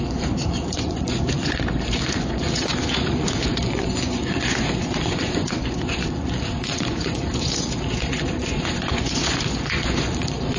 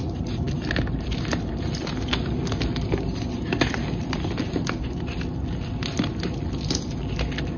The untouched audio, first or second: second